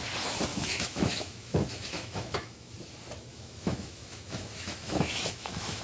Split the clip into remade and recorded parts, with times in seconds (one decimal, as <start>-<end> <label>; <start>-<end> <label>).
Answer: 0.0-0.5 recorded; 0.5-2.7 remade; 2.7-3.3 recorded; 3.3-5.8 remade